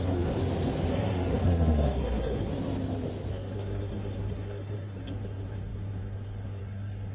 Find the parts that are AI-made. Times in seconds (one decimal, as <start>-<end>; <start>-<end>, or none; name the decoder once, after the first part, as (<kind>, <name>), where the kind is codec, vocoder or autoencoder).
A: 0.0-0.4 (codec, SNAC); 0.9-2.5; 3.3-7.1